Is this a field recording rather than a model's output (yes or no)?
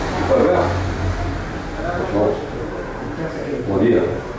yes